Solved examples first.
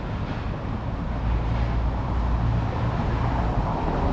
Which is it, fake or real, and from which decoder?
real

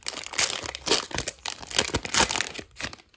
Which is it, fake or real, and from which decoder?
real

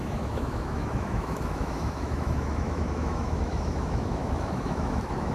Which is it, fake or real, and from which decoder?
fake, autoencoder, DAC-VAE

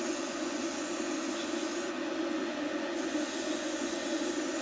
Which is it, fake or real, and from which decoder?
fake, vocoder, Vocos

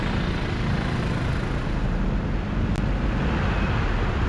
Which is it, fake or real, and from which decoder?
real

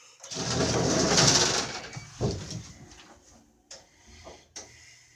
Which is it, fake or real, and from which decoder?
real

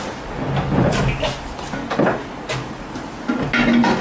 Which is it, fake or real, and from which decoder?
real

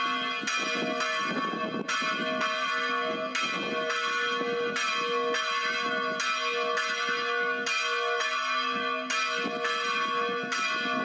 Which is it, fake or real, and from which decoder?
real